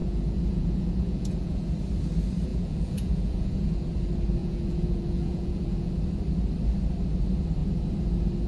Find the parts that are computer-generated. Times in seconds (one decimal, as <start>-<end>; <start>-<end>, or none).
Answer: 0.0-1.7; 2.5-3.7; 4.4-5.9